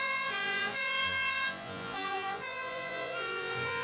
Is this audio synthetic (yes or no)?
yes